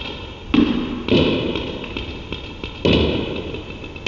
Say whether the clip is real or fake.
real